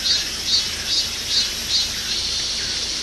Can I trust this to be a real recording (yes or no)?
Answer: yes